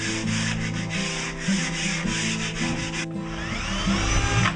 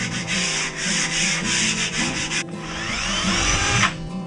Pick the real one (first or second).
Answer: first